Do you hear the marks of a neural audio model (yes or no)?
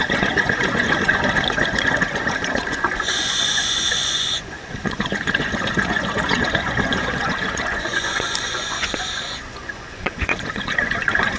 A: yes